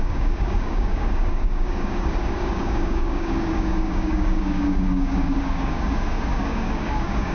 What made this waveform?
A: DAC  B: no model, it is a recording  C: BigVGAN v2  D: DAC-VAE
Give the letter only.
A